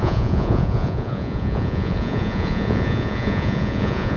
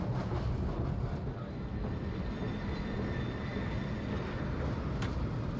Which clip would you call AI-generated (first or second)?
first